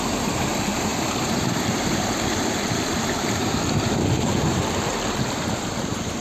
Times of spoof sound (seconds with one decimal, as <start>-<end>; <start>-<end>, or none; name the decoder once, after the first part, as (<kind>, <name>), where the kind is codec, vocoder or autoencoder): 0.0-3.4 (vocoder, BigVGAN v2); 4.5-6.2